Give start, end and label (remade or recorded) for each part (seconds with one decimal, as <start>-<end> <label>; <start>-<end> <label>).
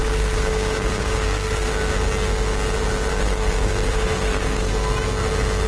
0.0-1.7 remade; 1.7-3.1 recorded; 3.1-4.7 remade; 4.7-5.7 recorded